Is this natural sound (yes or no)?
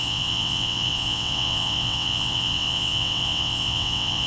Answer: no